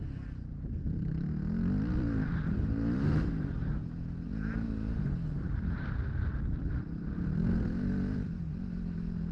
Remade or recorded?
recorded